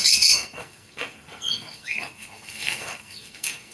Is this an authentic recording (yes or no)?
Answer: no